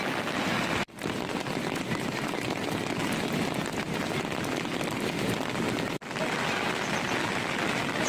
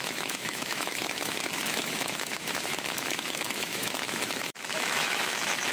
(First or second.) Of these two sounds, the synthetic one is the second